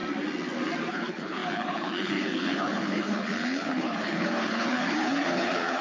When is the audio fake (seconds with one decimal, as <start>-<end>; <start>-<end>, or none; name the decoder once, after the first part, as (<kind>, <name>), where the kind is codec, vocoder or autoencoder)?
0.9-5.8 (codec, HILCodec)

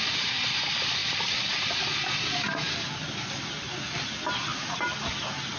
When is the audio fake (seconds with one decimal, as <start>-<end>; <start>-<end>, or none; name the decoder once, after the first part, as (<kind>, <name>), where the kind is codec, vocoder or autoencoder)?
none

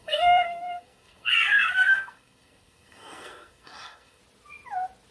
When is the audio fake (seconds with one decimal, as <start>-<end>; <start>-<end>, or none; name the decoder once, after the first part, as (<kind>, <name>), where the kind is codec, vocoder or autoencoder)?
0.0-4.2 (codec, SNAC)

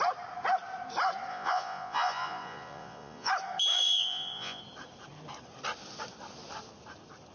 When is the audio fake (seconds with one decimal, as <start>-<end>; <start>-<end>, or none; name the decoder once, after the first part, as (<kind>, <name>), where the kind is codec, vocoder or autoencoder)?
1.3-3.3 (vocoder, Vocos); 3.7-4.6

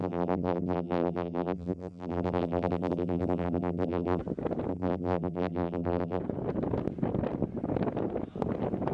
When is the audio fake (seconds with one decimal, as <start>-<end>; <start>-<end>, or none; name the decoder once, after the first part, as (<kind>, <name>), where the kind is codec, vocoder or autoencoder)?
0.0-4.2 (vocoder, BigVGAN v2); 4.7-6.2

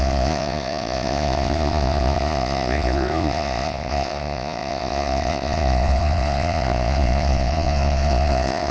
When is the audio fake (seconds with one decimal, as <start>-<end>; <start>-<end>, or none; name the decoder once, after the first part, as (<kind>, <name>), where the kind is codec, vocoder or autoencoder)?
0.0-8.7 (vocoder, Vocos)

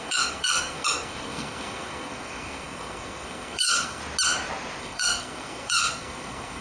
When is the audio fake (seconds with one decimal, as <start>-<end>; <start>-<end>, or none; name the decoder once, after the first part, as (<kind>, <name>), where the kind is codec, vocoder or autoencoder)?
0.0-4.0 (codec, SNAC); 4.8-6.6